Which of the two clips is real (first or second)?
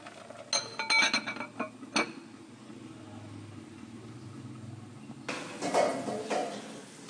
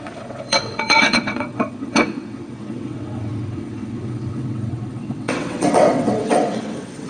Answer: first